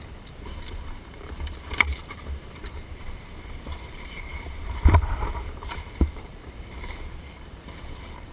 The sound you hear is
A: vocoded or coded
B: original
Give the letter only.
A